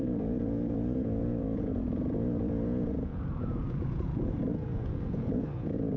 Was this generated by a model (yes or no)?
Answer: yes